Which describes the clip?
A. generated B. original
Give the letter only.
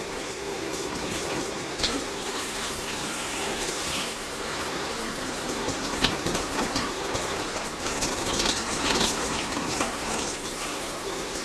A